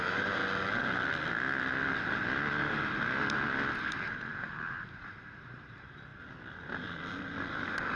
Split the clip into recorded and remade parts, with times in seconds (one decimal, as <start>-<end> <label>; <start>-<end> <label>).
0.0-0.4 remade; 0.4-3.9 recorded; 3.9-6.1 remade; 6.1-7.5 recorded; 7.5-8.0 remade